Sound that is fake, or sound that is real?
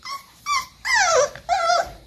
fake